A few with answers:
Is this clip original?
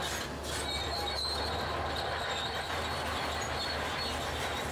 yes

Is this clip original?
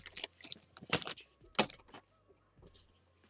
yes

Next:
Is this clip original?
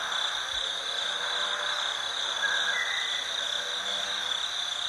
yes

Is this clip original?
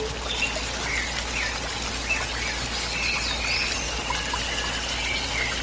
yes